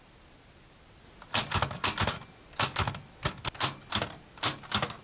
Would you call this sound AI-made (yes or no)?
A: no